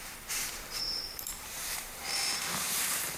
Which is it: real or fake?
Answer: fake